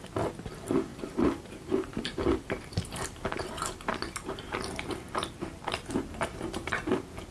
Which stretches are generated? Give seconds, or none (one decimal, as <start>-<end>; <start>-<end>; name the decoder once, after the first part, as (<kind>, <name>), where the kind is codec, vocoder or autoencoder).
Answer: 0.9-3.8 (vocoder, BigVGAN v2); 6.1-6.7